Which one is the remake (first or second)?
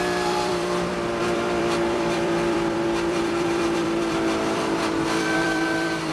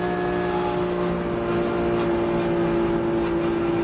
first